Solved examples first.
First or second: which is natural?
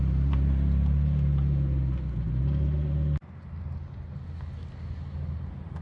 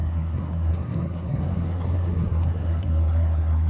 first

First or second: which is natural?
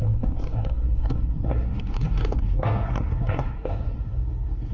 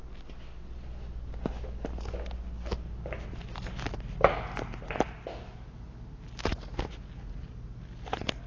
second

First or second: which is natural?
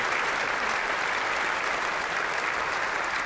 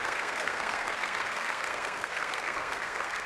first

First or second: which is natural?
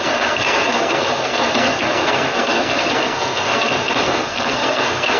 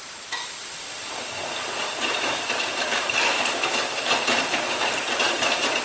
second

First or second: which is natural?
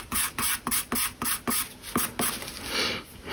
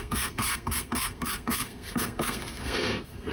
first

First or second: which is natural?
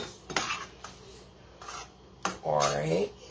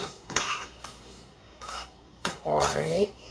first